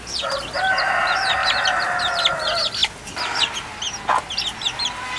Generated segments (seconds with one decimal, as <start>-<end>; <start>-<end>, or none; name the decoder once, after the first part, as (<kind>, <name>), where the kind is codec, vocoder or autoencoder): 1.4-2.0 (vocoder, BigVGAN v2)